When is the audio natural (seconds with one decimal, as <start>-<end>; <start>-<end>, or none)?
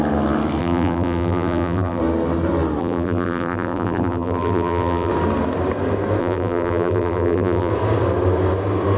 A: 0.0-0.6; 2.0-2.8; 5.1-6.2; 7.7-9.0